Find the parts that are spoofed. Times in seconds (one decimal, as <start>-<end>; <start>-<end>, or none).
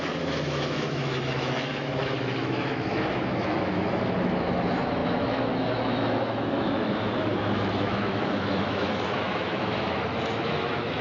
0.0-11.0